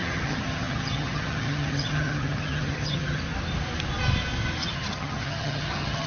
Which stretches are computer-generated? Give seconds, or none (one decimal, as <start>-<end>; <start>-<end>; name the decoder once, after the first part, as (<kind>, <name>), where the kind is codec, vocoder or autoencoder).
0.0-3.2 (vocoder, HiFi-GAN); 4.6-6.1